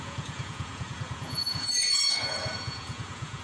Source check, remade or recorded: remade